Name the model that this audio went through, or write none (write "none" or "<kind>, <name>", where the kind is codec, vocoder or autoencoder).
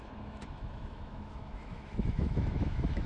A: autoencoder, DAC-VAE